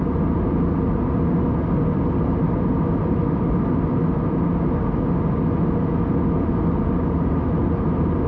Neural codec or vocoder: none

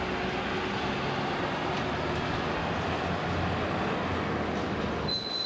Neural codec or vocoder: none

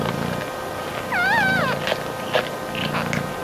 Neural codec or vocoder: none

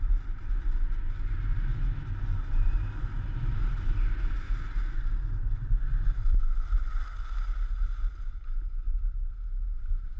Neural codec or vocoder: none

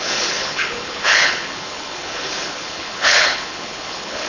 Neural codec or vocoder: codec, HILCodec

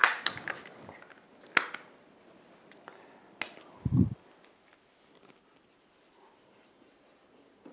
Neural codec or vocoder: none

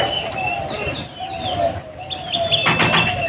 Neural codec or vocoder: none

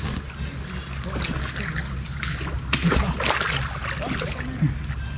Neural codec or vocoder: none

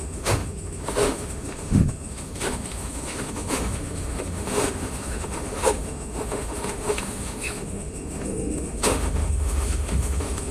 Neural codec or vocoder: autoencoder, DAC-VAE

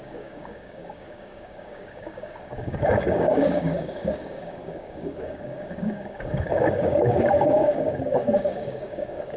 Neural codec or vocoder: codec, DAC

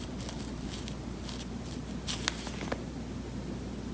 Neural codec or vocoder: none